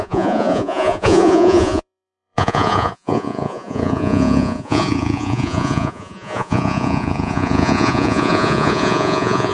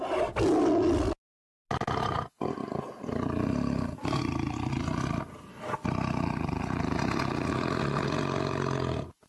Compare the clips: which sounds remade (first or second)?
first